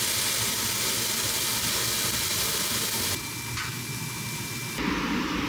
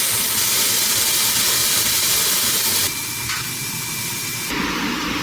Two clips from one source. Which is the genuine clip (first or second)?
first